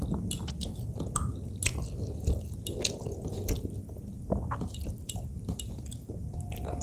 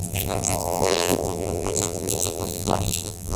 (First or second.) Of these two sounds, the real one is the first